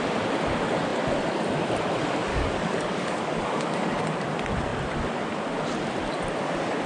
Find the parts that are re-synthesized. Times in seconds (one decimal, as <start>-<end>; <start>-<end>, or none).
2.3-4.0